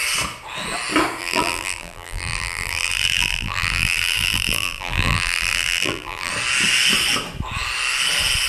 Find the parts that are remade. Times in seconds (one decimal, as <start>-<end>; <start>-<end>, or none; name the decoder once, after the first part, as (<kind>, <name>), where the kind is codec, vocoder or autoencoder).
1.2-6.3 (vocoder, BigVGAN v2)